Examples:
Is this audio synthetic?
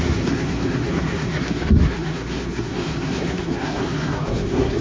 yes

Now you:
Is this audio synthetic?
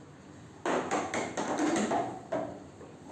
no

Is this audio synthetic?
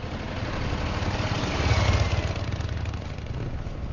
no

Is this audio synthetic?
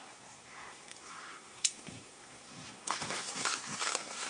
yes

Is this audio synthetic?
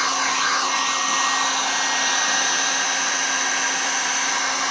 no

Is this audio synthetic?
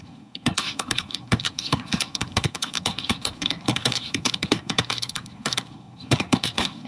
yes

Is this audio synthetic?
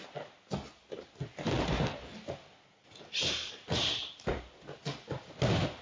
no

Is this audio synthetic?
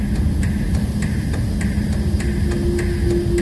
no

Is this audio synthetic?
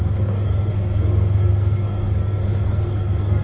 yes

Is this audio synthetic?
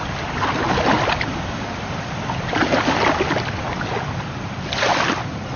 no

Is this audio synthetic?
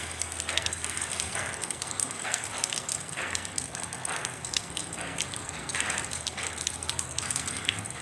yes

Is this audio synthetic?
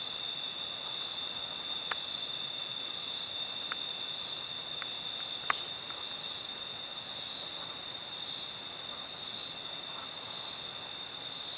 no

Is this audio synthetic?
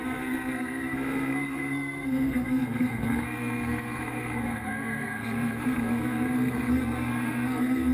yes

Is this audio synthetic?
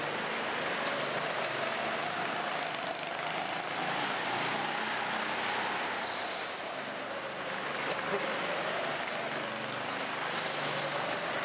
no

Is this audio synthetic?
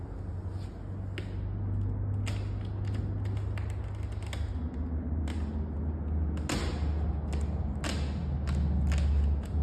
no